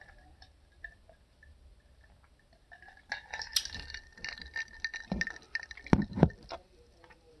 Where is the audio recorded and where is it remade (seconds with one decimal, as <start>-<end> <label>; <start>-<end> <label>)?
0.0-7.4 recorded